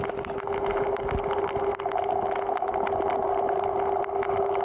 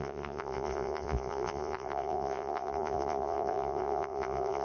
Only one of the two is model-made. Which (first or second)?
second